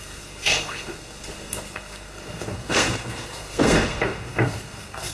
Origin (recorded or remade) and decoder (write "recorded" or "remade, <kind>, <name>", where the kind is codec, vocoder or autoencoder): remade, codec, SNAC